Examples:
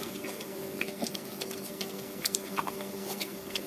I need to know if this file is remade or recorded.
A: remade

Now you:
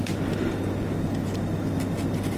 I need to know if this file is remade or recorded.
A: recorded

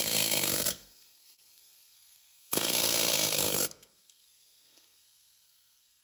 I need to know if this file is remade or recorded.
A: remade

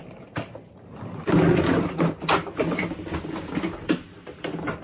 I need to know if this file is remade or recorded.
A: recorded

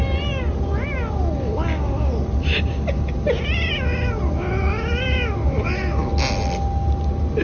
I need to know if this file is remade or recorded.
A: recorded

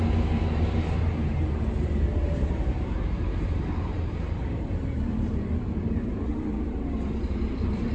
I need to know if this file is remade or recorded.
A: remade